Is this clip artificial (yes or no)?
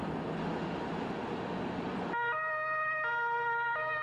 no